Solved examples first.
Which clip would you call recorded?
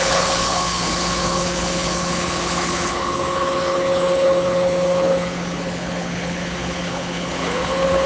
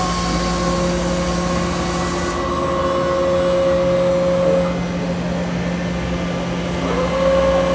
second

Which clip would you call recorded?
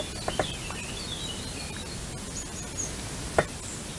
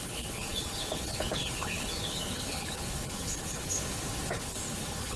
first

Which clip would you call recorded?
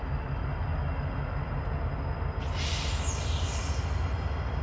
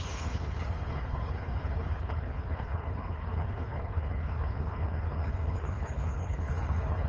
first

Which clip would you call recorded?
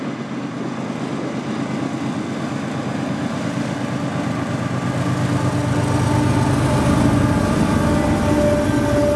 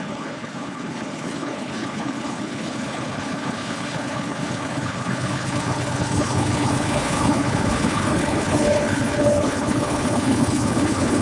first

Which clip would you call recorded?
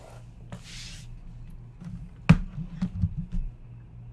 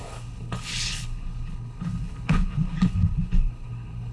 first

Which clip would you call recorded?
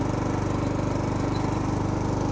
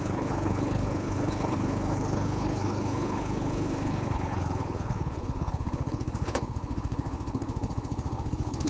first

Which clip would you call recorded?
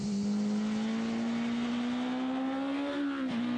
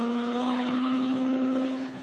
first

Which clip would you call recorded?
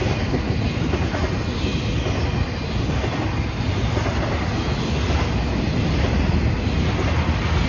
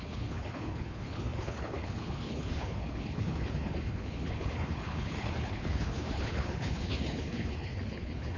first